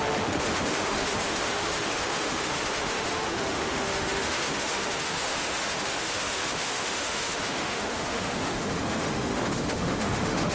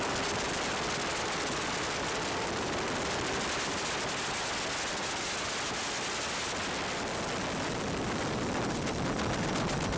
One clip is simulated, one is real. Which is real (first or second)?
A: second